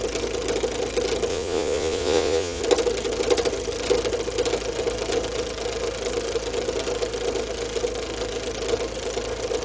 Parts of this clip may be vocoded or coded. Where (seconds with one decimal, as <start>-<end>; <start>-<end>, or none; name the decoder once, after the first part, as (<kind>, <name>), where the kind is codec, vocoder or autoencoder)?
1.3-2.6 (vocoder, Vocos)